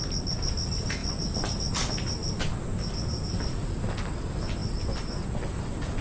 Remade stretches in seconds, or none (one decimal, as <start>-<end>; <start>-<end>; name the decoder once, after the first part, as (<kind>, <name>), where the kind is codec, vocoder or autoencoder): none